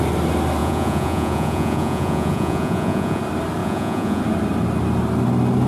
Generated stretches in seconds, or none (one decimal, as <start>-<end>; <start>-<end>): 0.6-3.2; 3.6-4.2